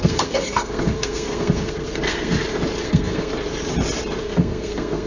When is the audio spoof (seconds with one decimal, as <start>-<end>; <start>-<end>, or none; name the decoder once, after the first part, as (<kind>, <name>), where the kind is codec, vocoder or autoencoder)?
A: 0.0-2.3 (codec, SNAC); 2.8-3.3; 4.2-5.1